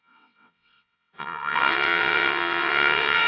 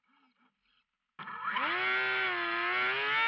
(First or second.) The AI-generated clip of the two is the first